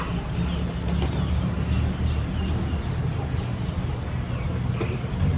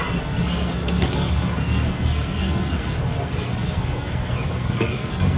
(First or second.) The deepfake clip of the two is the second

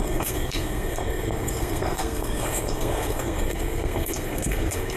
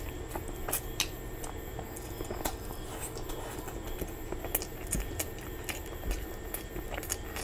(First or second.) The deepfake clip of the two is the first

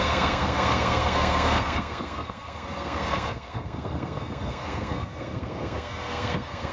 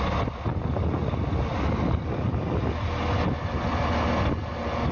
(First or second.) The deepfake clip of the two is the first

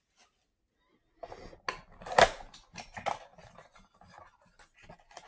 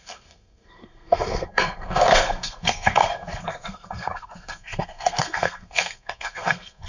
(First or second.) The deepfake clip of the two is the second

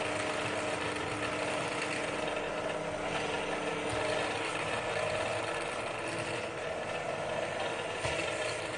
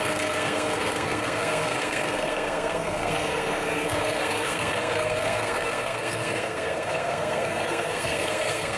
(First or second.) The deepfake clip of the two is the second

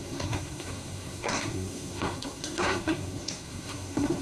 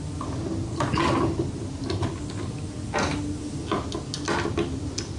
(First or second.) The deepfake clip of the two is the first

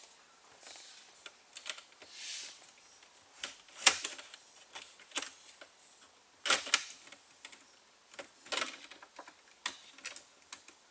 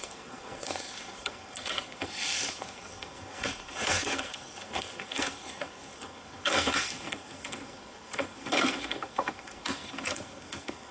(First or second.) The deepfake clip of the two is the second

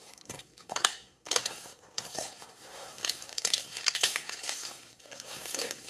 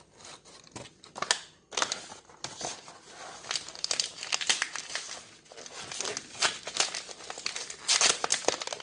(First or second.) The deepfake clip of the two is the first